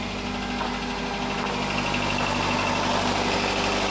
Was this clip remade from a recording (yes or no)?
no